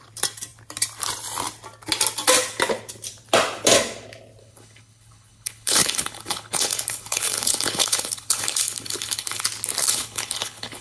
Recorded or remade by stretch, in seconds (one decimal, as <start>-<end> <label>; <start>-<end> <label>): 0.0-4.4 recorded; 4.4-9.4 remade; 9.4-9.8 recorded; 9.8-10.8 remade